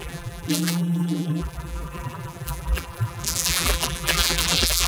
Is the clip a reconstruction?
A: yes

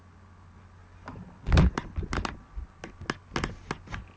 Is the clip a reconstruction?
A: no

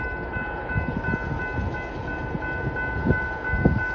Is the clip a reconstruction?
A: no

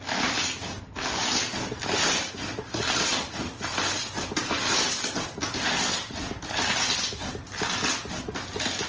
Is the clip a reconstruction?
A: no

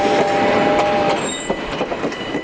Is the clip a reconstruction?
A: no